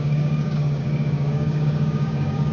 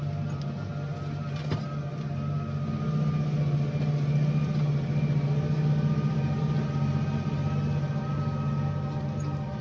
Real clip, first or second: second